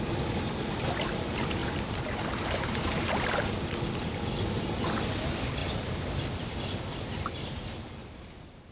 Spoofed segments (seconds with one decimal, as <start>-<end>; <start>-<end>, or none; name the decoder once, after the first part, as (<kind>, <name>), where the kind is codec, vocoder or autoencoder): 1.6-3.4 (vocoder, BigVGAN v2); 8.0-8.7